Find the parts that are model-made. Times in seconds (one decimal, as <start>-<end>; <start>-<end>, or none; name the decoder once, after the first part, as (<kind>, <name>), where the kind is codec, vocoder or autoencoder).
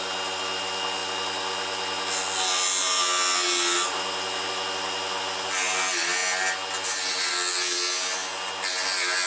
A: none